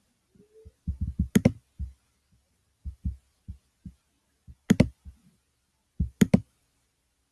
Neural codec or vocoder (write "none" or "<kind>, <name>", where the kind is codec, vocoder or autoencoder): none